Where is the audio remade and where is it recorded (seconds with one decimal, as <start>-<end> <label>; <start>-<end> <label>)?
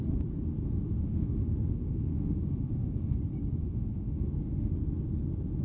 0.0-0.8 recorded; 0.8-3.2 remade; 3.2-3.6 recorded; 3.6-4.7 remade; 4.7-5.6 recorded